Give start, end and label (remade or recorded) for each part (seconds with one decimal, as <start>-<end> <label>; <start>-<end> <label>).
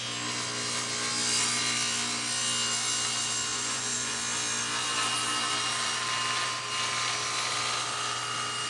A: 0.0-3.5 recorded; 3.5-4.2 remade; 4.2-8.7 recorded